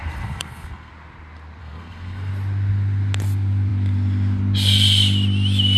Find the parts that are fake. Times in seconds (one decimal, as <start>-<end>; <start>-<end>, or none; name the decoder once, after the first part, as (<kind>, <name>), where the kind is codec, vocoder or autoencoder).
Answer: 0.0-0.9 (codec, SNAC); 1.6-2.3